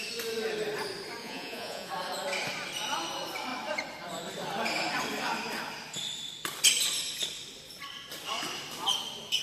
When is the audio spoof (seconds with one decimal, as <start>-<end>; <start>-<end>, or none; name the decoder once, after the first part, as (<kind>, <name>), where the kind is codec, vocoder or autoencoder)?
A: 1.2-1.9 (vocoder, Vocos)